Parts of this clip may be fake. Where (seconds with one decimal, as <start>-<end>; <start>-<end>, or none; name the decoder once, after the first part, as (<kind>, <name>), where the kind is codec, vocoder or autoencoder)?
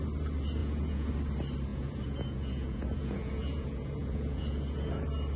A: 0.6-1.1 (vocoder, Vocos); 1.7-4.9